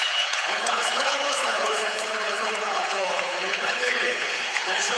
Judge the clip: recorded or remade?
remade